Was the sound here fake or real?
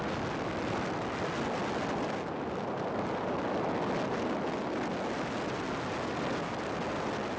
real